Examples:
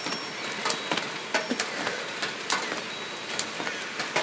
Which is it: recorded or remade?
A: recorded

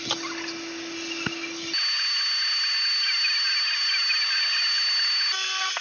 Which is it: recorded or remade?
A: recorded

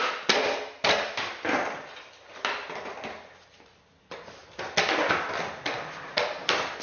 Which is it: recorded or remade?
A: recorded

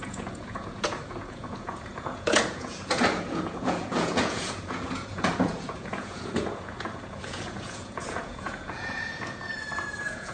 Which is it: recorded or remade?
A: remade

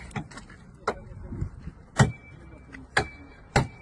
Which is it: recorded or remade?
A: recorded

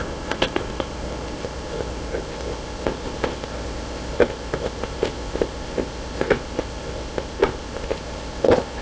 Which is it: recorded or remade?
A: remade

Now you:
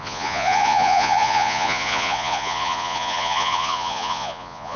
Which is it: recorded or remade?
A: remade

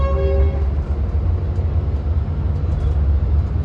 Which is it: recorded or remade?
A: recorded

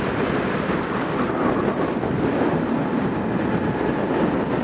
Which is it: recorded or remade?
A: remade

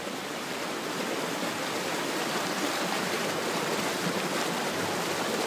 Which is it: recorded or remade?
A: remade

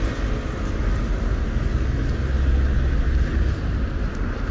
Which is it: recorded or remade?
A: recorded